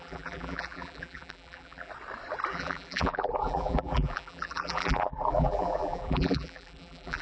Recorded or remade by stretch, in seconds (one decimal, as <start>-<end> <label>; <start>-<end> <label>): 0.0-1.9 remade; 1.9-2.5 recorded; 2.5-7.2 remade